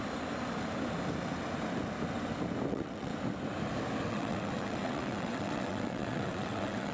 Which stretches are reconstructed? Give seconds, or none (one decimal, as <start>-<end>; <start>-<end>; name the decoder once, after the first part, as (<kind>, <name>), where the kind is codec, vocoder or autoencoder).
2.7-3.1 (vocoder, WaveNeXt); 4.1-6.9